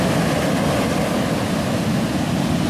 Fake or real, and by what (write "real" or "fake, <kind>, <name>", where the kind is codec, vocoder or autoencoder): real